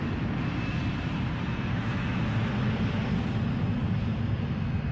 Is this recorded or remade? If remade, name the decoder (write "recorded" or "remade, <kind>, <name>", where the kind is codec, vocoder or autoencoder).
recorded